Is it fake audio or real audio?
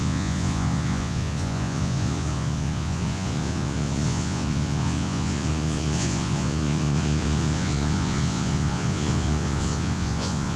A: fake